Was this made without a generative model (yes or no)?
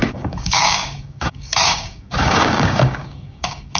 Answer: no